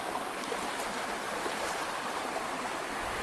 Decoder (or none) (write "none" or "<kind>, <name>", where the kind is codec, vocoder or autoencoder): none